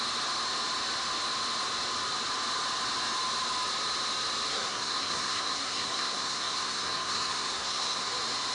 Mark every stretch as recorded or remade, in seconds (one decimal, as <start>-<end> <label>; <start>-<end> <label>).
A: 0.0-4.5 recorded; 4.5-8.1 remade; 8.1-8.5 recorded